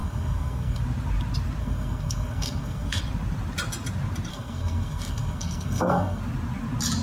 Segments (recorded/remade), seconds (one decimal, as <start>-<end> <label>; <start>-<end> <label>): 0.0-0.8 remade; 0.8-1.6 recorded; 1.6-3.0 remade; 3.0-4.3 recorded; 4.3-6.2 remade; 6.2-7.0 recorded